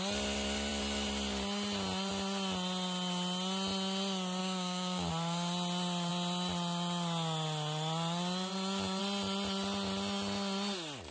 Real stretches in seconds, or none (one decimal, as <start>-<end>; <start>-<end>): 0.0-4.4; 5.1-11.1